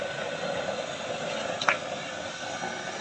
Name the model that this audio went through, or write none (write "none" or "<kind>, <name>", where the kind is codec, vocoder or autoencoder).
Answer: none